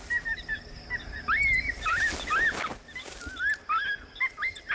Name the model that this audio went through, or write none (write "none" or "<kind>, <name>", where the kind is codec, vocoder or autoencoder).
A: none